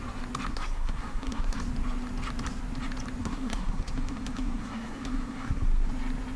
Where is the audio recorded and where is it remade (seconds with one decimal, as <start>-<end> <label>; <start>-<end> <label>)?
0.0-0.5 recorded; 0.5-1.6 remade; 1.6-3.2 recorded; 3.2-5.9 remade; 5.9-6.4 recorded